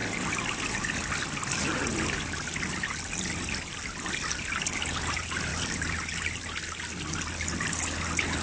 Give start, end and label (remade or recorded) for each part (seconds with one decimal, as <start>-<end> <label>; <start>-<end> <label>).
0.0-8.4 recorded